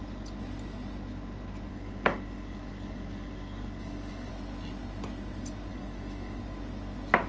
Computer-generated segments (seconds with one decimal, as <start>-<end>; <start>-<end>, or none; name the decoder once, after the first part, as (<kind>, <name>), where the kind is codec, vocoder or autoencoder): 1.7-4.3 (codec, DAC); 5.7-6.4